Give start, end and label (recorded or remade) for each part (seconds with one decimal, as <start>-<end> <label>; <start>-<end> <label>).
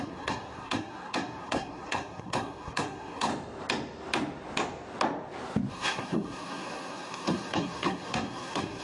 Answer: 0.0-3.3 remade; 3.3-5.7 recorded; 5.7-8.8 remade